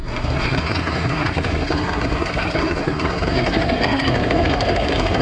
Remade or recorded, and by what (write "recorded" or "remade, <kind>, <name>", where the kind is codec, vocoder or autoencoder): remade, codec, SNAC